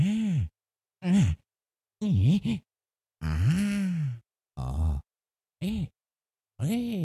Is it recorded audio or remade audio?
recorded